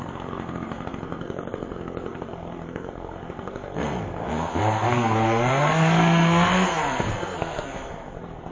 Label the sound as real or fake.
fake